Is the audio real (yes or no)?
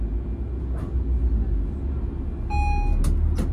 yes